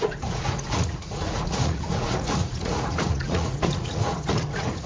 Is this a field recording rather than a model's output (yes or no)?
no